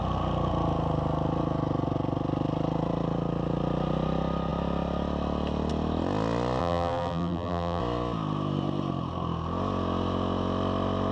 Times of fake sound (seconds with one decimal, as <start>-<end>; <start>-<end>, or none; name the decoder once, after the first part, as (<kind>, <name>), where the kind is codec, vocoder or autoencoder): 6.6-7.8 (vocoder, BigVGAN v2)